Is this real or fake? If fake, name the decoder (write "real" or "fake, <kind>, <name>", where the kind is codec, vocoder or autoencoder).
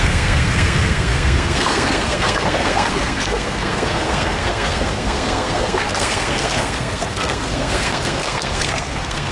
fake, codec, SNAC